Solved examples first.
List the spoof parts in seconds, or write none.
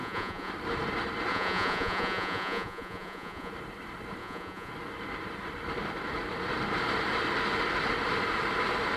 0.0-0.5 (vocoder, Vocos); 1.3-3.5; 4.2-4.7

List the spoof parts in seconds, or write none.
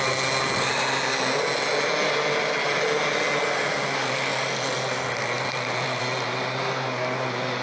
none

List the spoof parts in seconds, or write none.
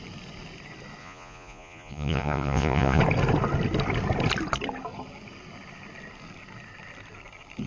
1.0-3.0 (vocoder, Vocos)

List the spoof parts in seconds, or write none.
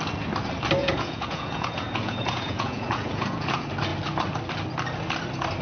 0.8-3.5 (vocoder, Vocos)